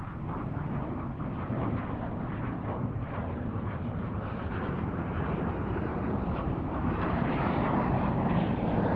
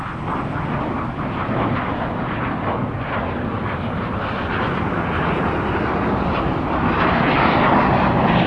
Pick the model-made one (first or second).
first